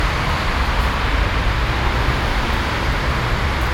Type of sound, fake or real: real